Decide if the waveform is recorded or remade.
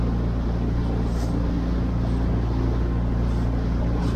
recorded